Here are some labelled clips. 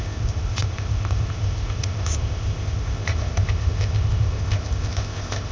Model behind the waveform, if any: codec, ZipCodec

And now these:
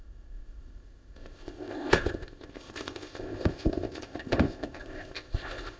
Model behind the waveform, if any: codec, ZipCodec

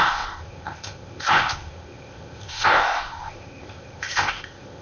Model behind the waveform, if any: codec, ZipCodec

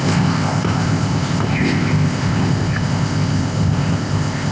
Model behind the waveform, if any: codec, ZipCodec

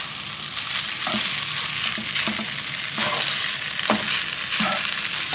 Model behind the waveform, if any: none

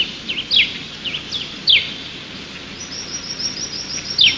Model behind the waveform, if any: none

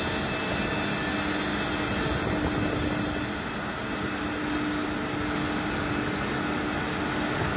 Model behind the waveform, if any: none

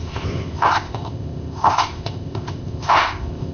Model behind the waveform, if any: codec, ZipCodec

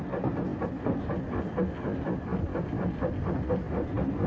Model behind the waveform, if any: none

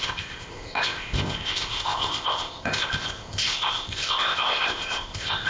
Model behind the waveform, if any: codec, ZipCodec